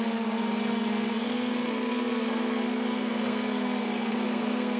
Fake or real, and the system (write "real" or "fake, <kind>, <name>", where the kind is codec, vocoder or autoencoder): fake, codec, SNAC